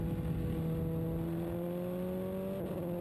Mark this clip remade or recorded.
recorded